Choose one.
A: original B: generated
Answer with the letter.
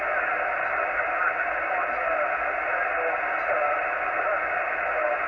A